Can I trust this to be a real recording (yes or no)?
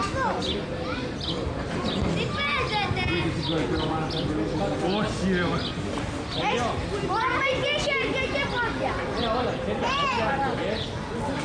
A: yes